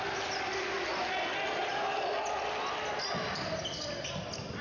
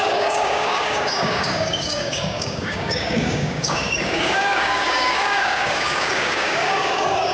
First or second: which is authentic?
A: first